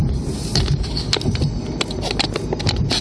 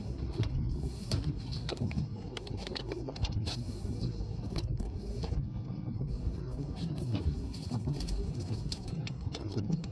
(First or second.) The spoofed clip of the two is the second